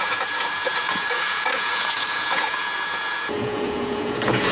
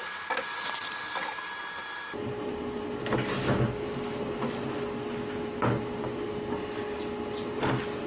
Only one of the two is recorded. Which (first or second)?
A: second